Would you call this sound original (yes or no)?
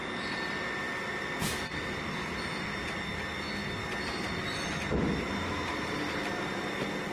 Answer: yes